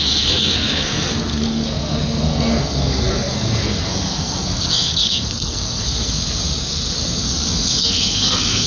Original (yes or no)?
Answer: no